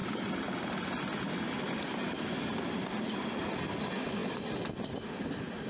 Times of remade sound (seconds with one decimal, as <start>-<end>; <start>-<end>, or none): 0.0-3.0; 4.2-4.9